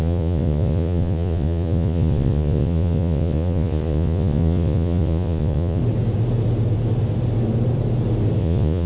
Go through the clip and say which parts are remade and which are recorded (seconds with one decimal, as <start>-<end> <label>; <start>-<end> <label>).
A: 0.0-5.8 remade; 5.8-8.4 recorded; 8.4-8.9 remade